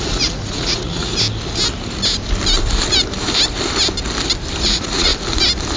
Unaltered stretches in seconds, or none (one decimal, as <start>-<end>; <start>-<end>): 1.1-4.6; 5.1-5.8